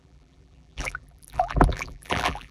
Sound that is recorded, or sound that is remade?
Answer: remade